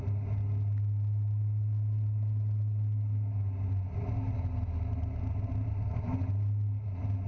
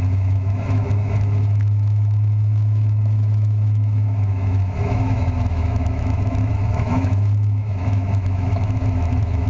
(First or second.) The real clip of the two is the first